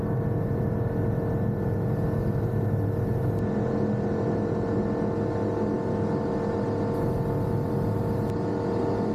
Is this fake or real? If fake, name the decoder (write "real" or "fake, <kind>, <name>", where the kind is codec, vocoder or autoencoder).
real